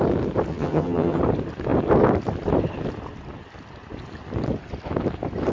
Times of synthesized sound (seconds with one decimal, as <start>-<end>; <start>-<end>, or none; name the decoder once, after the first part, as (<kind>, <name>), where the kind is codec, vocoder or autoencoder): 0.5-1.2 (vocoder, HiFi-GAN)